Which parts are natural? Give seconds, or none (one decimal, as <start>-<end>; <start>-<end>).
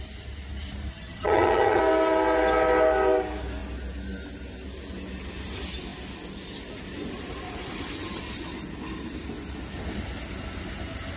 0.0-0.9; 1.8-11.2